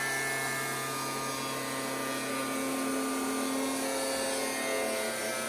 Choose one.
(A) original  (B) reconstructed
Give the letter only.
A